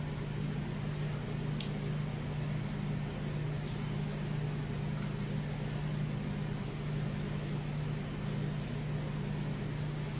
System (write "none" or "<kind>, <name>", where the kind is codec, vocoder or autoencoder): none